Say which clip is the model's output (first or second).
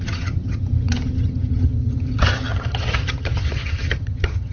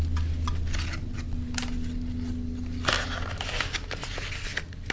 first